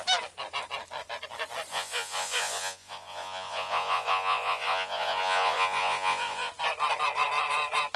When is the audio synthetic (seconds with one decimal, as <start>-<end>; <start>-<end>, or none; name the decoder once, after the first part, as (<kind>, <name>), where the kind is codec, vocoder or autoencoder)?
1.7-6.5 (vocoder, Vocos)

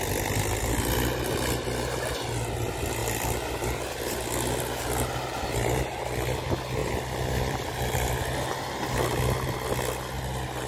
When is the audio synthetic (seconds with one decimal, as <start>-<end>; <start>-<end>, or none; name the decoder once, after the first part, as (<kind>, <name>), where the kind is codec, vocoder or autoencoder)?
3.0-4.2 (vocoder, BigVGAN v2); 6.8-8.5